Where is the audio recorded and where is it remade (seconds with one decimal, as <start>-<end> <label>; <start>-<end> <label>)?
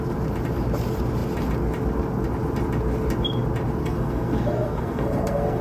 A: 0.0-3.8 recorded; 3.8-5.6 remade